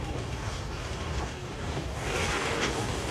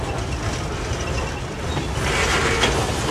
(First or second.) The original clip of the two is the second